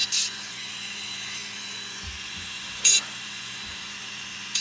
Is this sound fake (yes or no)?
yes